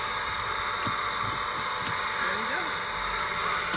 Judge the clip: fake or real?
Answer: real